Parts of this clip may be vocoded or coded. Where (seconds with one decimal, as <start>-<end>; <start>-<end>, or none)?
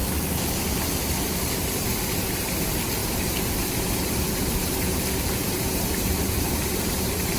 3.0-7.4